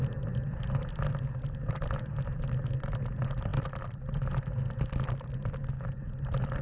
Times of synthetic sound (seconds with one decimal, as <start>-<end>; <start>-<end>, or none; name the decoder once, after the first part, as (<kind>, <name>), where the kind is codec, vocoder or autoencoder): none